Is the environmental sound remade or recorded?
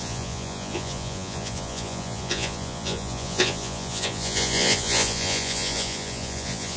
remade